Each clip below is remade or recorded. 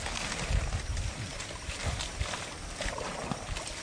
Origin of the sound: recorded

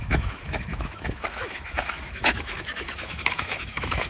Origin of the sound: remade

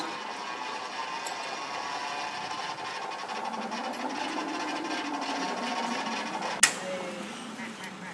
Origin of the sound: recorded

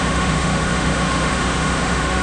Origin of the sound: remade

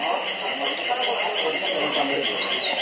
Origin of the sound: recorded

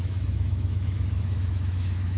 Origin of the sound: remade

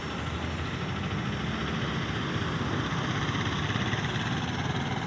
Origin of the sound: recorded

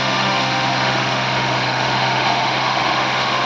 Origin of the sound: remade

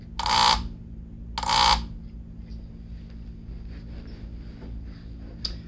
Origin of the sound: recorded